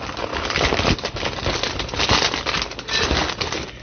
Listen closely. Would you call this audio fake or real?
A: real